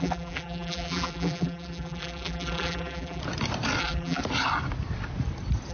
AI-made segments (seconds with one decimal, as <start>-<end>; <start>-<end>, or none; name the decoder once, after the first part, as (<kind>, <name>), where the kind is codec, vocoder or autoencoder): 0.0-3.2 (vocoder, BigVGAN v2); 3.8-4.2